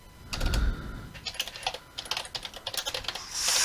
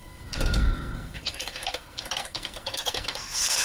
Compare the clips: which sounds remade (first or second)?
second